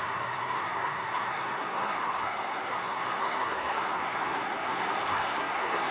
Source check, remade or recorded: remade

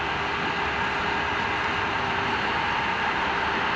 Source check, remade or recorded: recorded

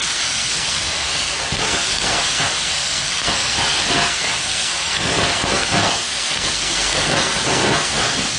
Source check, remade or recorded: remade